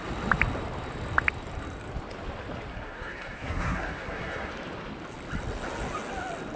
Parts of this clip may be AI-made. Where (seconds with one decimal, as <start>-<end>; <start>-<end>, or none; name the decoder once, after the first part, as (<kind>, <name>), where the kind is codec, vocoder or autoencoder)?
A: 2.7-4.5 (codec, SNAC)